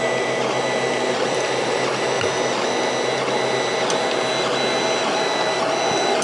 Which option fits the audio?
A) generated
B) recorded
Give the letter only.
B